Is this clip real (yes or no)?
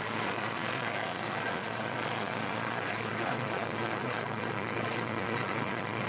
no